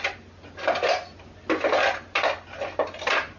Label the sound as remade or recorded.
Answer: recorded